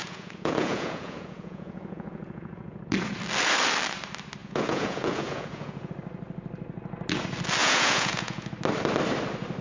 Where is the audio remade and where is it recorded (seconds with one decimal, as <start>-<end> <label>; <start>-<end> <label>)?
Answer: 0.0-2.8 remade; 2.8-4.4 recorded; 4.4-5.9 remade; 5.9-7.6 recorded; 7.6-8.5 remade; 8.5-9.6 recorded